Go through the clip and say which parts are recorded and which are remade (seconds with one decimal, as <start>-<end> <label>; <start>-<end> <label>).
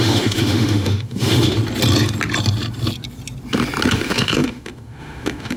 0.0-1.6 remade; 1.6-3.9 recorded; 3.9-5.6 remade